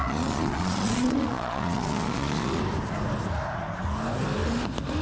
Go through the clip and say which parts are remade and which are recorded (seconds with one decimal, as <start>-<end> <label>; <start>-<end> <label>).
0.0-2.6 remade; 2.6-5.0 recorded